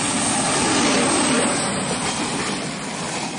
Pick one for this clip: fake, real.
real